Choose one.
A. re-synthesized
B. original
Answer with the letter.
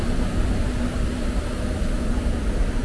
B